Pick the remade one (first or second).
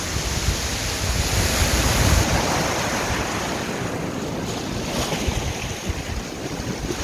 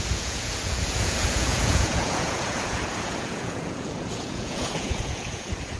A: second